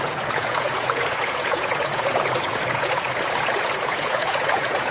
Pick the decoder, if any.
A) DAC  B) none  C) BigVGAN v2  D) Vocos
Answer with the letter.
D